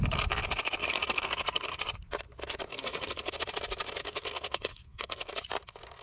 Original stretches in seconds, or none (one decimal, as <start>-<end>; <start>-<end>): 0.0-0.8; 1.8-2.7; 3.3-4.0; 5.3-6.0